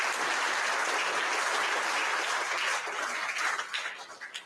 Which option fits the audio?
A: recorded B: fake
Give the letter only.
A